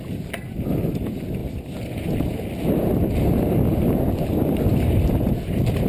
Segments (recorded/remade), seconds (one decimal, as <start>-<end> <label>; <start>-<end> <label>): 0.0-5.9 recorded